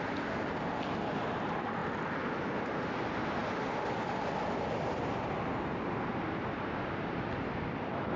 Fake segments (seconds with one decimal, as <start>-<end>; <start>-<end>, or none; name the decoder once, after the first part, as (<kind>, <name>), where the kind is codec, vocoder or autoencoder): none